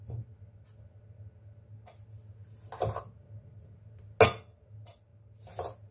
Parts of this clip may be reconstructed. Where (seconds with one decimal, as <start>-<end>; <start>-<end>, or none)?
none